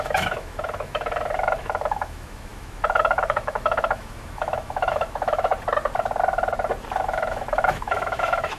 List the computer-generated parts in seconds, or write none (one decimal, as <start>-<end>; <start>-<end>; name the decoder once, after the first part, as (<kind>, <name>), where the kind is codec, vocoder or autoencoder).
0.0-5.5 (autoencoder, DAC-VAE); 7.0-8.6

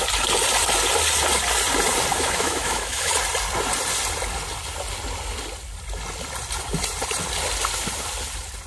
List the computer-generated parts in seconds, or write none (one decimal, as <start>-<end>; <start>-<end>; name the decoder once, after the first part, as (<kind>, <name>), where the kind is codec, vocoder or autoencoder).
2.1-3.1 (autoencoder, DAC-VAE)